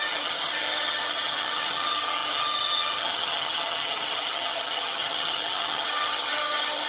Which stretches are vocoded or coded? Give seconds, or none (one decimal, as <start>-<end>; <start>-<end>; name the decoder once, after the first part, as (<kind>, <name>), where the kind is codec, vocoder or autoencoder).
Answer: 0.0-6.9 (vocoder, HiFi-GAN)